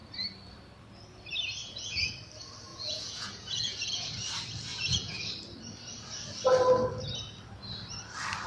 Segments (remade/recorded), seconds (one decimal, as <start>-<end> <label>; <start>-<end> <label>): 0.0-1.6 recorded; 1.6-2.1 remade; 2.1-2.7 recorded; 2.7-4.1 remade; 4.1-4.7 recorded; 4.7-5.3 remade; 5.3-8.5 recorded